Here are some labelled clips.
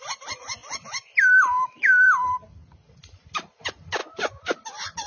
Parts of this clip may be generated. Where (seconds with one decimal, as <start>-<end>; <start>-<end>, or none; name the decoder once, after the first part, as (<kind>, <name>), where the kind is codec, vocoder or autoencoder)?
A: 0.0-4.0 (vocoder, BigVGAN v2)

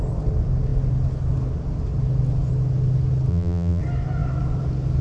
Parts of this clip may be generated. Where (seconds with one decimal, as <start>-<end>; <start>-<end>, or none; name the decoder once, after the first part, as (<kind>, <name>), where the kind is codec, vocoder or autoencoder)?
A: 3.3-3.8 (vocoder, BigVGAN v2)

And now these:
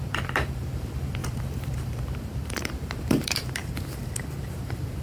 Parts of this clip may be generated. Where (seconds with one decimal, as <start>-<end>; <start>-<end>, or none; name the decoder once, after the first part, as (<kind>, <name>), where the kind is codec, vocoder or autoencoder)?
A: 0.0-5.0 (vocoder, BigVGAN v2)

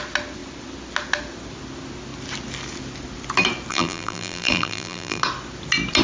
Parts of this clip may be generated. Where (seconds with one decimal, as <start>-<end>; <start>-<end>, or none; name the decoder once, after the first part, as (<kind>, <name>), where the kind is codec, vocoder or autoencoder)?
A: 3.7-5.2 (vocoder, BigVGAN v2)